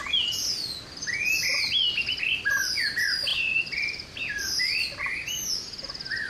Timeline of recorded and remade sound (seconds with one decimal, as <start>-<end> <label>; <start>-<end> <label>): 0.0-3.3 recorded; 3.3-4.2 remade; 4.2-6.3 recorded